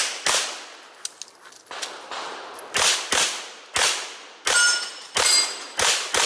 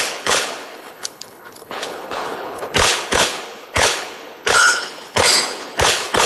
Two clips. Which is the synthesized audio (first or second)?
second